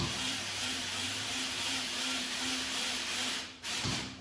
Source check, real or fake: fake